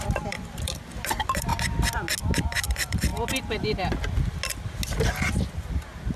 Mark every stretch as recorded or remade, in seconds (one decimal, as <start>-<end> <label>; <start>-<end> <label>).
0.0-1.5 remade; 1.5-2.4 recorded; 2.4-3.1 remade; 3.1-5.7 recorded; 5.7-6.2 remade